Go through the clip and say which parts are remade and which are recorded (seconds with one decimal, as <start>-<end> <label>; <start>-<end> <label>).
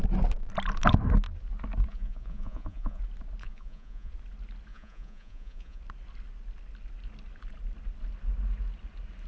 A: 0.0-1.9 recorded; 1.9-3.0 remade; 3.0-3.4 recorded; 3.4-4.1 remade; 4.1-4.7 recorded; 4.7-5.8 remade; 5.8-9.3 recorded